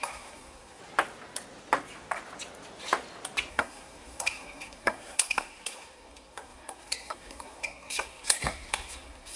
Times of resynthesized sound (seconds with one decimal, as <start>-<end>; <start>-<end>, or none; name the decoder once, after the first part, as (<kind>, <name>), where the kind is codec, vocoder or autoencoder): 0.0-0.8 (codec, SNAC); 3.5-9.4